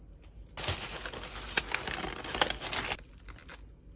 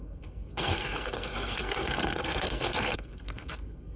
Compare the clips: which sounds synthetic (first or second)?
second